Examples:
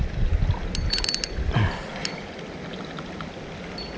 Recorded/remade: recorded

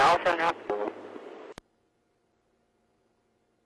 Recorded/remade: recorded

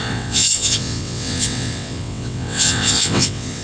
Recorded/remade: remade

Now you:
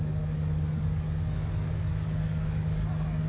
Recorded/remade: remade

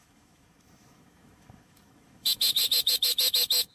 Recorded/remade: remade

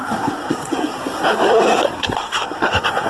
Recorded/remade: remade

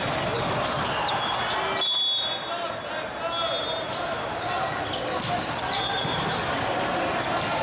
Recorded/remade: recorded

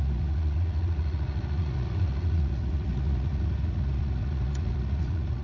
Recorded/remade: remade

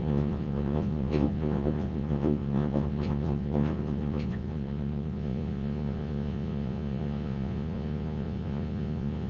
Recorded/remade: remade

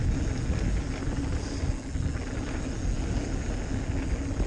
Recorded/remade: recorded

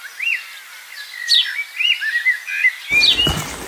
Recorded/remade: recorded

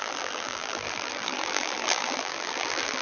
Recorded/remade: remade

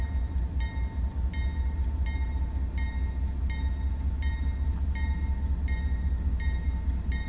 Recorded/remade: recorded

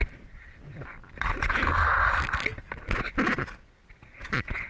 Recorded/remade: recorded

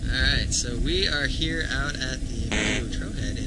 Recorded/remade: recorded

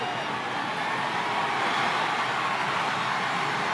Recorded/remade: recorded